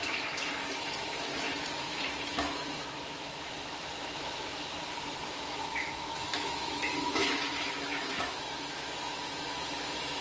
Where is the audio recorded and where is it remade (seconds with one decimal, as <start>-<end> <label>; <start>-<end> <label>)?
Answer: 0.0-1.3 remade; 1.3-1.8 recorded; 1.8-10.2 remade